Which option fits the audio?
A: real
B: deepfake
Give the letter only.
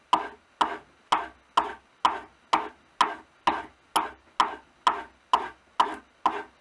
A